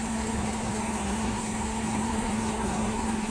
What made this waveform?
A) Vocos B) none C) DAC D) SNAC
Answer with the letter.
D